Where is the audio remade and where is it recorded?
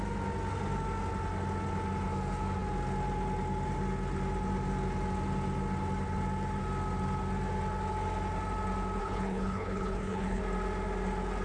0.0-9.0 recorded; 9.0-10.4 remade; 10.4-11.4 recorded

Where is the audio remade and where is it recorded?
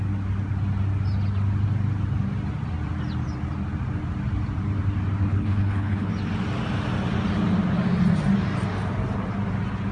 0.0-5.3 recorded; 5.3-6.1 remade; 6.1-9.9 recorded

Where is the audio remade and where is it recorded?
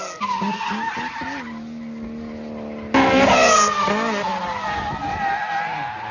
0.0-6.1 recorded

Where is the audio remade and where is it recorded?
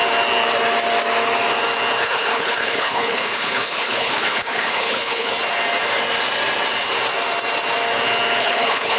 0.0-2.0 recorded; 2.0-5.3 remade; 5.3-8.4 recorded; 8.4-9.0 remade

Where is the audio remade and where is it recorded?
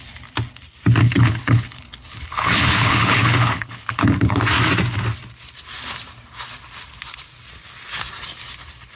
0.0-1.0 recorded; 1.0-4.4 remade; 4.4-9.0 recorded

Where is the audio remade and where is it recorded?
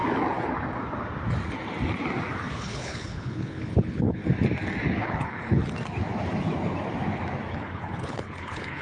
0.0-2.5 recorded; 2.5-4.2 remade; 4.2-4.9 recorded; 4.9-5.6 remade; 5.6-7.5 recorded; 7.5-8.8 remade